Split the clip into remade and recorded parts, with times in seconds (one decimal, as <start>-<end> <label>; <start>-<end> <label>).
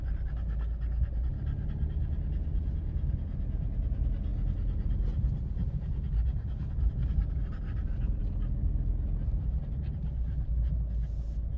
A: 0.0-11.6 recorded